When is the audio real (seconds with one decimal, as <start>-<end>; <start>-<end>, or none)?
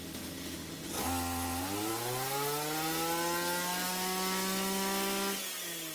0.9-5.9